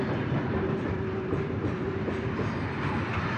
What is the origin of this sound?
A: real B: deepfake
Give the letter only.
B